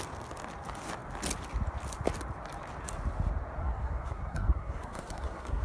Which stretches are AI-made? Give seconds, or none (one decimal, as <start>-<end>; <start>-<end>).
3.6-5.6